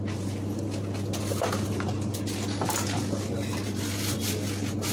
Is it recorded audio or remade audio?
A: recorded